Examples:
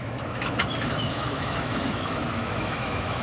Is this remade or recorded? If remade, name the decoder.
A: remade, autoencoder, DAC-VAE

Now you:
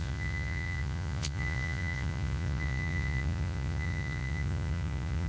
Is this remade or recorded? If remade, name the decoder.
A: remade, vocoder, Vocos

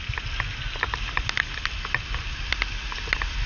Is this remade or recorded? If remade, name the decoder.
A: recorded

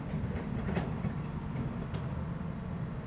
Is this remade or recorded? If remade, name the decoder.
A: recorded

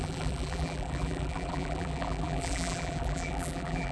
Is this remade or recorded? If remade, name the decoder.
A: remade, vocoder, BigVGAN v2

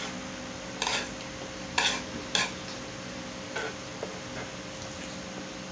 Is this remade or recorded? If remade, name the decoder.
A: recorded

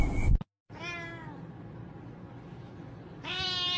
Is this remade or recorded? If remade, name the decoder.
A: recorded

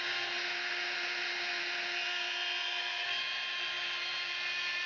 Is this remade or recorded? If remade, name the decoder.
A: recorded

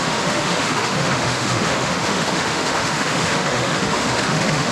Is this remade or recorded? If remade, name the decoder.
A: remade, autoencoder, DAC-VAE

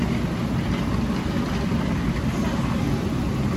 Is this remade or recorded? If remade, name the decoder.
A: recorded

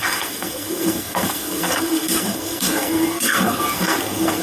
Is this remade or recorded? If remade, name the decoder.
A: remade, codec, SNAC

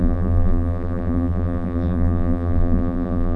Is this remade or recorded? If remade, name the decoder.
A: remade, vocoder, BigVGAN v2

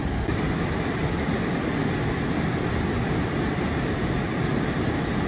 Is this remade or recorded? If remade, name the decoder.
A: recorded